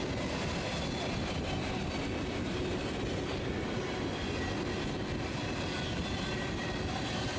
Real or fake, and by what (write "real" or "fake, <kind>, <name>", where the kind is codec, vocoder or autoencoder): real